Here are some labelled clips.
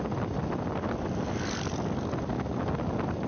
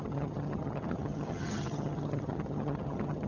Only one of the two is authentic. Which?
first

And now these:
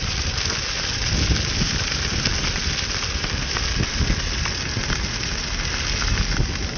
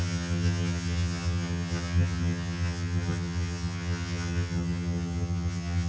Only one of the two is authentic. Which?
first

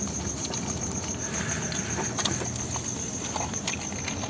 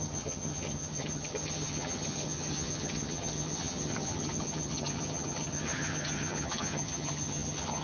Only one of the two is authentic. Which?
first